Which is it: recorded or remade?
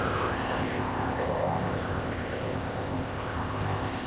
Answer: remade